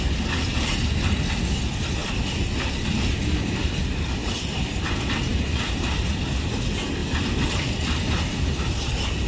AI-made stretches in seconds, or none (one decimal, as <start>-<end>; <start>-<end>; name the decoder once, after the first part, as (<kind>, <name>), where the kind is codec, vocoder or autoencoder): 4.2-4.8 (vocoder, BigVGAN v2); 5.3-6.2; 7.0-8.7